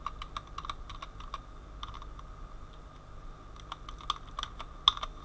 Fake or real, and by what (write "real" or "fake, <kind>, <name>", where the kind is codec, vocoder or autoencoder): real